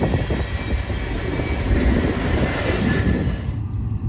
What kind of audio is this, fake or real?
real